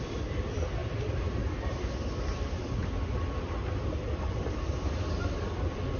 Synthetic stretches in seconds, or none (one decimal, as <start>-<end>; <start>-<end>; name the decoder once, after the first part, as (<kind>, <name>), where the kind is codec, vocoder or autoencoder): none

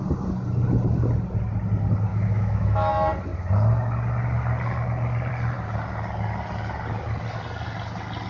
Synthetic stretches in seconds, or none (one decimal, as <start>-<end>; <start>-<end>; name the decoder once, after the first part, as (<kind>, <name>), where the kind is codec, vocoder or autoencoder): 2.1-2.9 (autoencoder, DAC-VAE)